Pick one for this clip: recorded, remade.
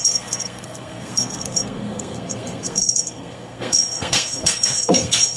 remade